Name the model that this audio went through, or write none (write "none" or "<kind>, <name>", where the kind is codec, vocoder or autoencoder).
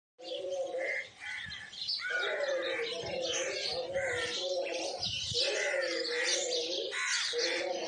vocoder, BigVGAN v2